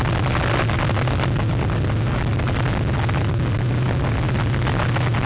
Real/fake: real